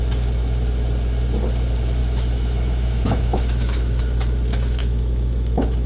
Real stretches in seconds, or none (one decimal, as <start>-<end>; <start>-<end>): 0.0-2.0; 4.0-4.8